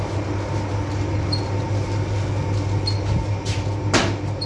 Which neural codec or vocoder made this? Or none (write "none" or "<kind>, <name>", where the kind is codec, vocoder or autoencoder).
none